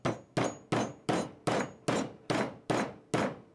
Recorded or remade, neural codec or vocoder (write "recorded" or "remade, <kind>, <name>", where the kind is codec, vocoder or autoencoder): recorded